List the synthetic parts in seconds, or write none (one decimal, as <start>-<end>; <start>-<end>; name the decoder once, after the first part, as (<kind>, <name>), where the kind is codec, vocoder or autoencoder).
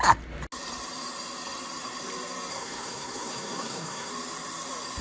2.5-4.1 (codec, SNAC)